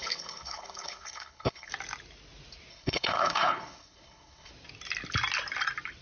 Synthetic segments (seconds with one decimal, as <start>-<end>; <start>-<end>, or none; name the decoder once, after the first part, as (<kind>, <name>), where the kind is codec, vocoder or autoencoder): 0.0-1.7 (codec, HILCodec); 2.7-4.5

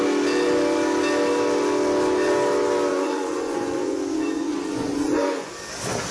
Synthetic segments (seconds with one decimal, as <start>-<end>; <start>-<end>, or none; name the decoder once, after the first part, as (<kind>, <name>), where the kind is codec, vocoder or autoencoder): 2.9-5.5 (vocoder, Vocos)

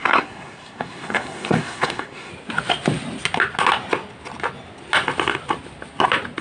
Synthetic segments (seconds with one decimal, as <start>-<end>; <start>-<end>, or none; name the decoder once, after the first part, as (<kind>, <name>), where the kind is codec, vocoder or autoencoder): 0.0-2.3 (codec, SNAC)